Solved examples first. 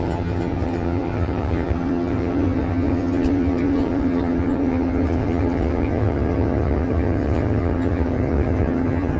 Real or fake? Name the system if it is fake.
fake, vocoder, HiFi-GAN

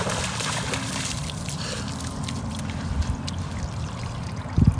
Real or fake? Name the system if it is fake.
real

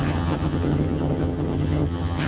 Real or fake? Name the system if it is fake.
fake, vocoder, HiFi-GAN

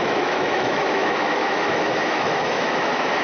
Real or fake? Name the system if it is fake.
fake, autoencoder, DAC-VAE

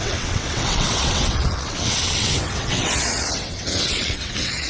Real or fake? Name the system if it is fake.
fake, vocoder, WaveNeXt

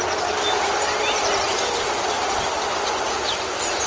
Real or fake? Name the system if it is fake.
real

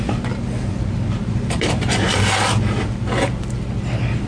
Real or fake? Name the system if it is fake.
fake, vocoder, BigVGAN v2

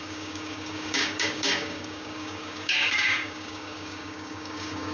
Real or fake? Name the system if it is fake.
fake, codec, DAC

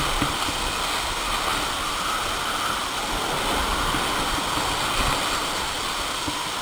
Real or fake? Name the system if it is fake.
real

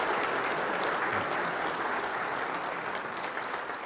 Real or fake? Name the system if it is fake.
real